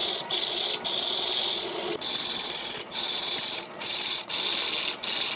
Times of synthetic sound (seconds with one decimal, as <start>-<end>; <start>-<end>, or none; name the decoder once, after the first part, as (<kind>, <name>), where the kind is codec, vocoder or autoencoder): 0.0-0.6 (vocoder, Vocos); 1.4-4.3